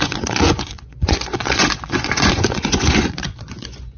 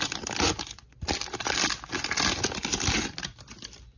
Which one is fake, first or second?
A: first